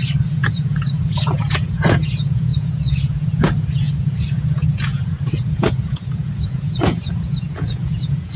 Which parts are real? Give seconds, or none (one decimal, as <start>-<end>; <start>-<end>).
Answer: none